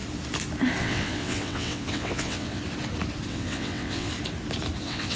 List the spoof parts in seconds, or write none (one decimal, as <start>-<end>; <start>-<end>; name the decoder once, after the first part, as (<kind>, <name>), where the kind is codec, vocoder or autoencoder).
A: 0.8-2.6 (vocoder, WaveNeXt); 3.3-4.1; 4.8-5.2